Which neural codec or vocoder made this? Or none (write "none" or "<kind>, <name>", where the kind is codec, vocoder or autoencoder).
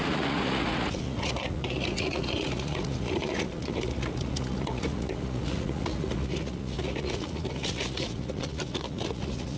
vocoder, Vocos